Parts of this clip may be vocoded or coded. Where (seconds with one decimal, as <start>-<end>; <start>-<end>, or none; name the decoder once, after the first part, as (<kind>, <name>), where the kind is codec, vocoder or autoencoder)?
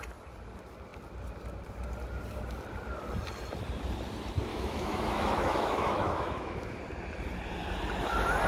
4.5-6.8 (autoencoder, DAC-VAE)